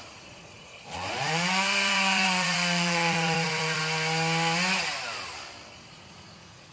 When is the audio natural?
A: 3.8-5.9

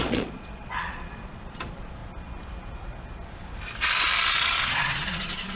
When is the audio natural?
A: 2.0-4.6

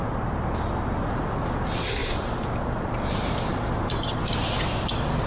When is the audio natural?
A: 0.0-5.3

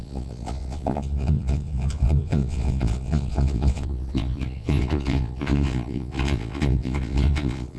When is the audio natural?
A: none

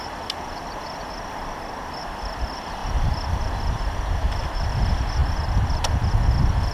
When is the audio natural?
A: 0.0-6.7

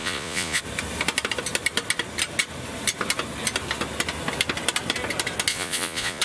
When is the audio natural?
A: 0.6-5.5

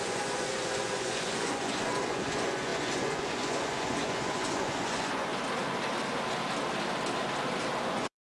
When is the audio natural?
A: 5.3-7.8

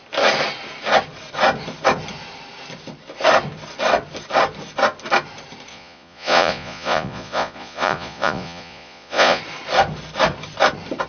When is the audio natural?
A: 0.0-5.7; 9.4-11.1